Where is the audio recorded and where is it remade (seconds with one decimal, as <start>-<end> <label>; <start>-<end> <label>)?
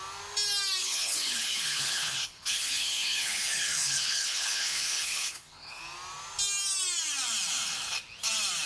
0.0-0.8 recorded; 0.8-5.8 remade; 5.8-8.7 recorded